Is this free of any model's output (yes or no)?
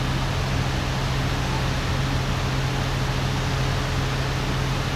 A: yes